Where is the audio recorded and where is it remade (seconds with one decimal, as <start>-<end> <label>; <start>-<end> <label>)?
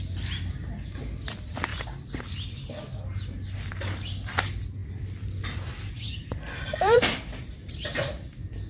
0.0-4.8 recorded; 4.8-7.7 remade; 7.7-8.7 recorded